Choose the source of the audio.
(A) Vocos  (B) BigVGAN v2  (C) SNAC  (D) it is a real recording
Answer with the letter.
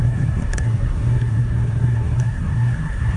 C